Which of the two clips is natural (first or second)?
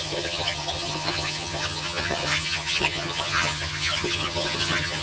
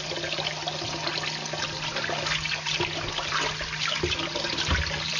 second